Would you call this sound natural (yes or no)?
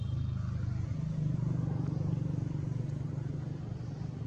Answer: yes